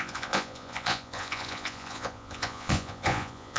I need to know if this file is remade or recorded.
remade